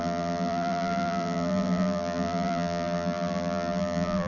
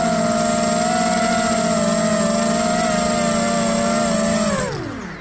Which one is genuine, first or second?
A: second